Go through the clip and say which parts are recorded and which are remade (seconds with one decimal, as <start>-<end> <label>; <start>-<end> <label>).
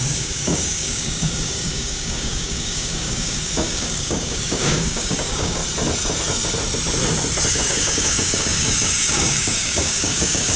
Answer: 0.0-5.6 remade; 5.6-7.5 recorded; 7.5-10.6 remade